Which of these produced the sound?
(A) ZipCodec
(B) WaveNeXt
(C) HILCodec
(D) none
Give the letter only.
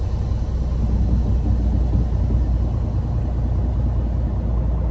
D